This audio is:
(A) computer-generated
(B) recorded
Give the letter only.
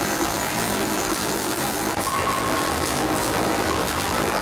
A